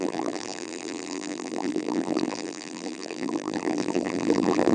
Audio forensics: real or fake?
fake